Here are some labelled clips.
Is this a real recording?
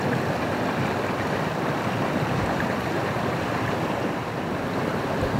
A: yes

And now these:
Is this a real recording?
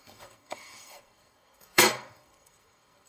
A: no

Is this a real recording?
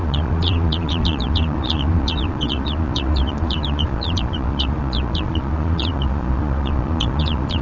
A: no